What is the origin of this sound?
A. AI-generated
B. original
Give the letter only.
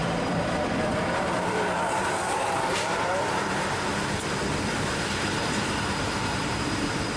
A